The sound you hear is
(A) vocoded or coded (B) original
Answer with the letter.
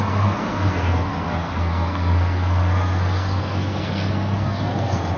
A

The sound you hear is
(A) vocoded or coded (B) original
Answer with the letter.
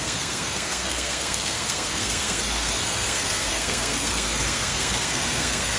A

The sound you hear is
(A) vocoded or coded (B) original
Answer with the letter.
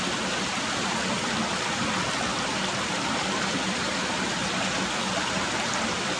B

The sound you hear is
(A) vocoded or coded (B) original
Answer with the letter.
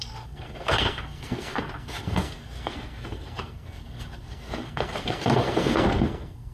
A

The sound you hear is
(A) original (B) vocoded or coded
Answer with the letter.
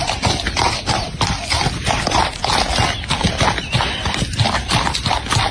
A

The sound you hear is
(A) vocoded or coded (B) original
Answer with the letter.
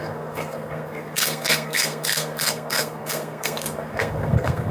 A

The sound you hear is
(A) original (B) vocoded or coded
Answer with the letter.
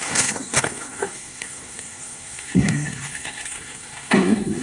B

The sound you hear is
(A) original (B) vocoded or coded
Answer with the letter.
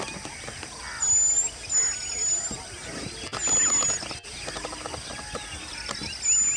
A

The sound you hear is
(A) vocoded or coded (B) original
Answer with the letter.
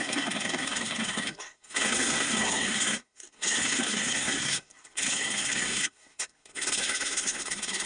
A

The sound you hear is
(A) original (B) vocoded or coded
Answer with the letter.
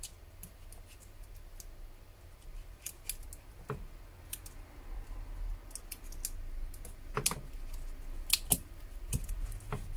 A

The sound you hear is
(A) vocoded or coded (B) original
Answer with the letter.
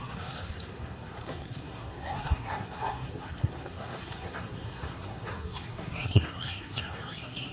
A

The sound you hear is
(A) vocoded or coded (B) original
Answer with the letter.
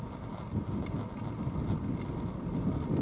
B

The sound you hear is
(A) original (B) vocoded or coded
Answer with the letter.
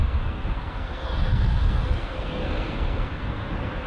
B